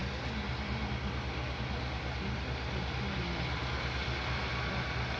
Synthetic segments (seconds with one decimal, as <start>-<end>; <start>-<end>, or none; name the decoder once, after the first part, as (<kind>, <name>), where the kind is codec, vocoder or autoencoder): none